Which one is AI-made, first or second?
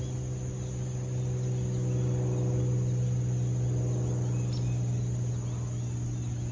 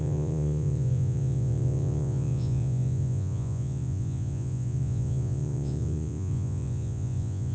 second